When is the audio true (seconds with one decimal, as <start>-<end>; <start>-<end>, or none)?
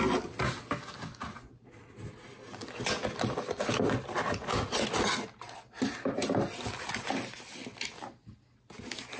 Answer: 0.0-9.2